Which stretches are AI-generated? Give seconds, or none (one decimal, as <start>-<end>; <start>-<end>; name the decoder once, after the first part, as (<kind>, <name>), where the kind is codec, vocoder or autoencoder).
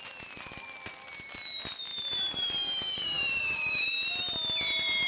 none